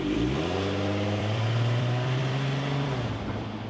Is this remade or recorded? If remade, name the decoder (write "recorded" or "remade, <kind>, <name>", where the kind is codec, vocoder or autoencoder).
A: remade, vocoder, BigVGAN v2